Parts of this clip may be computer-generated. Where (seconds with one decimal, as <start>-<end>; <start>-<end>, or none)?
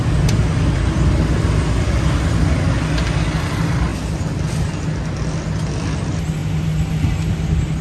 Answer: none